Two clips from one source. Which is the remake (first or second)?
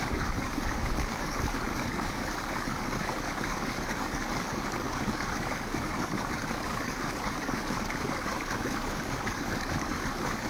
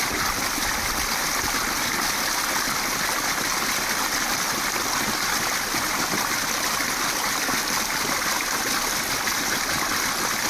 first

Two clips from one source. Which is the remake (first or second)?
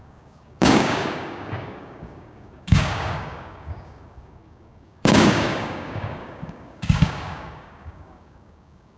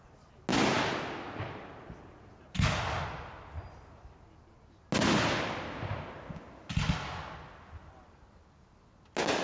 first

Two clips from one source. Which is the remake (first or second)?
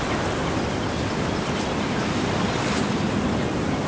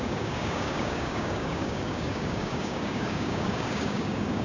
second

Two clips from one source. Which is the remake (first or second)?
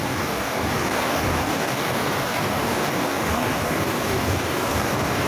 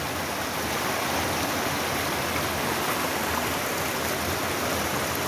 first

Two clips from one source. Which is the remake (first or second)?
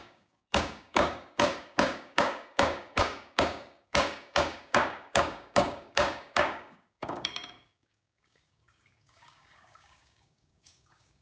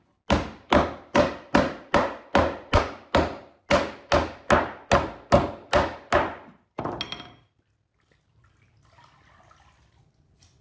first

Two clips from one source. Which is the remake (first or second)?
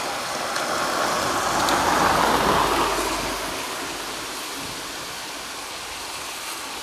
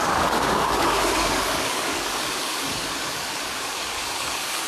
second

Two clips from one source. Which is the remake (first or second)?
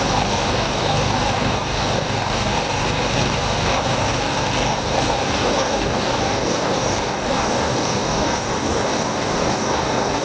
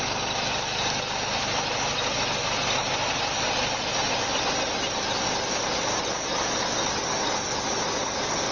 first